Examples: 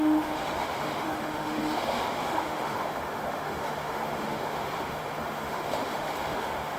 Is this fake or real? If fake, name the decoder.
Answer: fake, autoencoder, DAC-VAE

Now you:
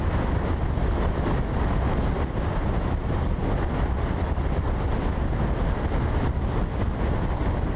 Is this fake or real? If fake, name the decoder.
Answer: real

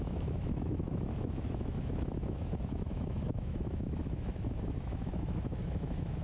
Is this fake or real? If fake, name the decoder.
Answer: fake, autoencoder, DAC-VAE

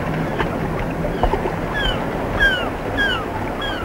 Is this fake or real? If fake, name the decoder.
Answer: real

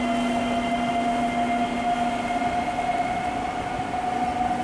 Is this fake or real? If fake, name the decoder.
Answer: real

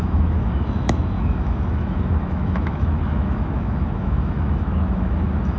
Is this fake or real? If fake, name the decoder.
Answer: fake, autoencoder, DAC-VAE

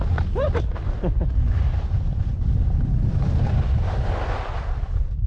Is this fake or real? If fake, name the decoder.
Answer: real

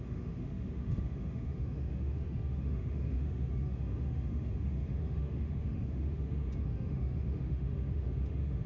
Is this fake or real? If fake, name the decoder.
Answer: fake, autoencoder, DAC-VAE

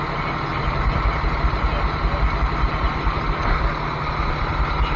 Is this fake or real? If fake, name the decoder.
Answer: real